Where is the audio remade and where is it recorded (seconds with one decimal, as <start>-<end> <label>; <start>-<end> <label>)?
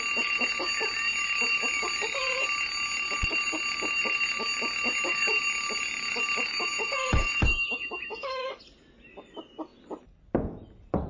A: 0.0-6.5 recorded; 6.5-8.6 remade; 8.6-11.1 recorded